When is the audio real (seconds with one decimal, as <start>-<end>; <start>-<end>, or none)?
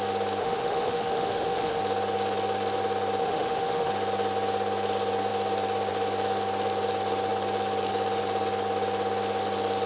0.0-0.4; 1.8-3.2; 3.9-9.9